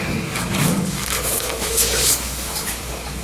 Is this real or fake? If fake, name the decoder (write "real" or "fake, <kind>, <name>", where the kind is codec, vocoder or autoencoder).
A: fake, codec, DAC